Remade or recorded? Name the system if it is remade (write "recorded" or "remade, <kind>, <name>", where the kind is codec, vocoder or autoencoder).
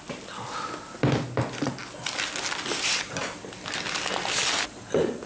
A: recorded